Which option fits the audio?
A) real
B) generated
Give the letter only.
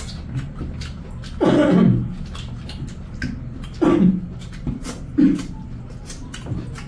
A